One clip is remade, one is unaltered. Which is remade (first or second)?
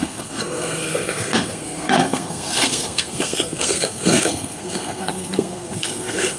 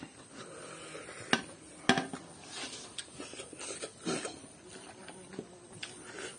first